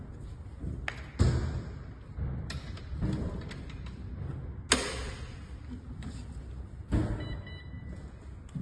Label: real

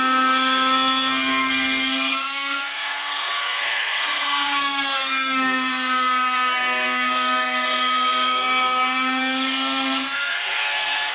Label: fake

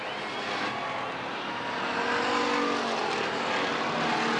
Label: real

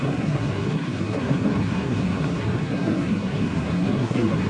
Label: fake